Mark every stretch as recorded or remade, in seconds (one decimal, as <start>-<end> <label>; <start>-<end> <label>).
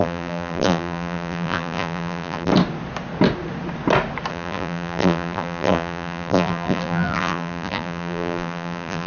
0.0-2.5 remade; 2.5-4.3 recorded; 4.3-9.1 remade